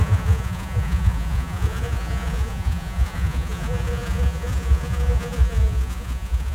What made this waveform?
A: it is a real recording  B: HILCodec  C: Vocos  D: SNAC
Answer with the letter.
C